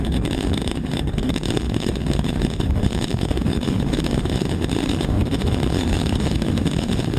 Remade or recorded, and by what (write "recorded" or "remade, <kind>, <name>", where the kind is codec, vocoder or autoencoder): remade, autoencoder, DAC-VAE